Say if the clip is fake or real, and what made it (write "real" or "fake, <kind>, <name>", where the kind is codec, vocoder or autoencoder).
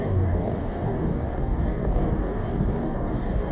fake, codec, DAC